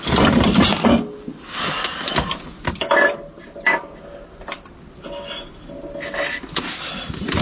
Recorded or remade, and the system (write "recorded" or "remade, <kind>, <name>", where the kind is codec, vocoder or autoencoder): recorded